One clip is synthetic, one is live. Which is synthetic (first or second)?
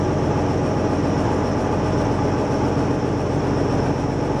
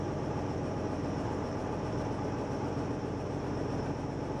second